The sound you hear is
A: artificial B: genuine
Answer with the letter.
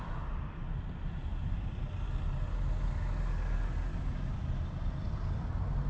B